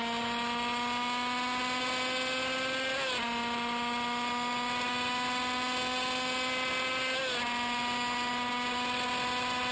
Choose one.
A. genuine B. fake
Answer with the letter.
A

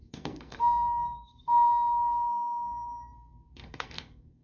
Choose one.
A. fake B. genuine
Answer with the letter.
A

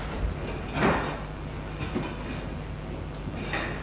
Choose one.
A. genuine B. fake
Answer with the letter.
A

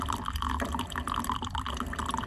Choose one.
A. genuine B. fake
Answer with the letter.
A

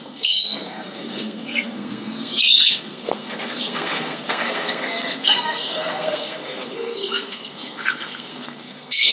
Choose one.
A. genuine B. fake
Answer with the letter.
B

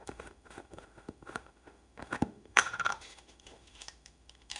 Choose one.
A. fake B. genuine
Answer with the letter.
A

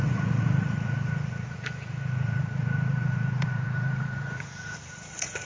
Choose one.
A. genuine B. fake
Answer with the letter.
B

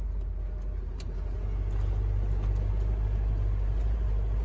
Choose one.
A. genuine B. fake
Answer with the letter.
A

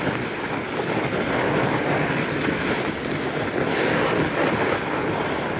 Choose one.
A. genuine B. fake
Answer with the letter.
A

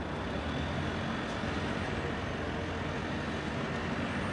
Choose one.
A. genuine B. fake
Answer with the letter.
A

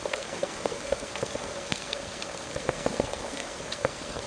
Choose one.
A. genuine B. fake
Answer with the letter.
B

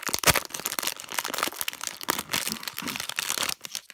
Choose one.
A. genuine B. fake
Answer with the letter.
A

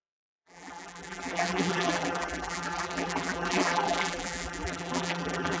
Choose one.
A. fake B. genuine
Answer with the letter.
A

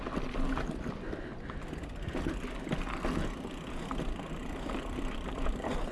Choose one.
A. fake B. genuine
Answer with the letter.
B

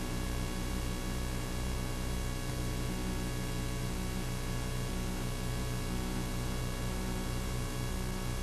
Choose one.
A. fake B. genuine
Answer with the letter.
B